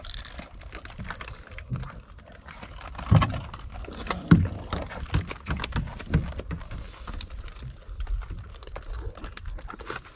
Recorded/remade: recorded